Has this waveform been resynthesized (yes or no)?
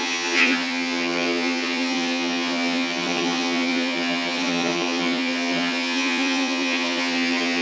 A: yes